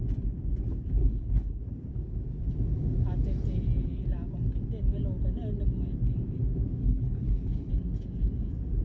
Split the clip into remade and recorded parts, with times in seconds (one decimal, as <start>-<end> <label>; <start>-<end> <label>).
0.0-1.0 recorded; 1.0-1.6 remade; 1.6-6.8 recorded; 6.8-7.7 remade; 7.7-8.8 recorded